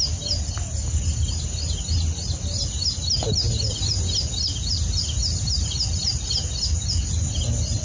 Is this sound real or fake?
real